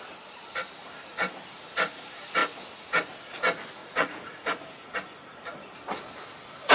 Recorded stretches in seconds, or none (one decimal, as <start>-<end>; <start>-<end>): 0.0-3.8; 4.6-6.7